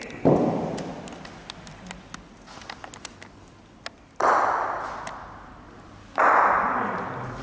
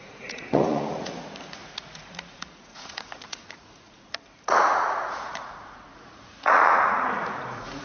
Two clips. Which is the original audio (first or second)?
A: first